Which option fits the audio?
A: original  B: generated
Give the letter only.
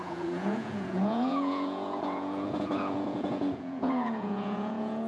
B